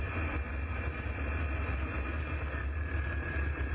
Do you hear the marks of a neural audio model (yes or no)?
yes